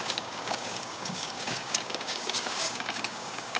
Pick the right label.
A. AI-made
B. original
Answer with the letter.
A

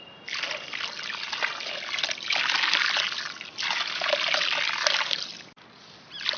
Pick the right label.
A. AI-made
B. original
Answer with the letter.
B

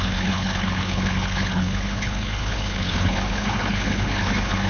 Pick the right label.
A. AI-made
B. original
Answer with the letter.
A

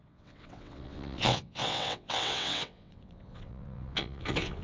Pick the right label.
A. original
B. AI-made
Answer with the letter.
B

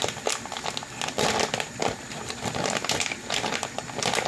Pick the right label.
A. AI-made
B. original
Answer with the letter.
B